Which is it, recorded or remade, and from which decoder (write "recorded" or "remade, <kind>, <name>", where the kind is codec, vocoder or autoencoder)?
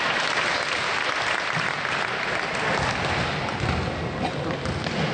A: recorded